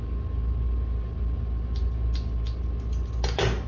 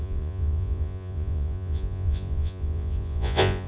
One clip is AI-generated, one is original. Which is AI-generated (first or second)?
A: second